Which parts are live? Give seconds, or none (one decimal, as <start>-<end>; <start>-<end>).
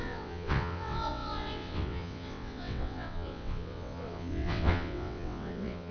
none